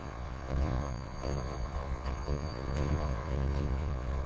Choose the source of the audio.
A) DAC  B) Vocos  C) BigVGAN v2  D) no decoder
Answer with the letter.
B